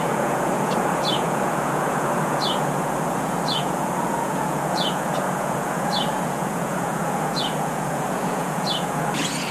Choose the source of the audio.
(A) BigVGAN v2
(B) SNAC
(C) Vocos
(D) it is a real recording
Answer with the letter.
C